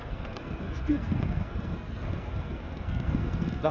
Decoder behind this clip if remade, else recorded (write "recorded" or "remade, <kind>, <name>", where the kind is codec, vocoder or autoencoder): remade, codec, SNAC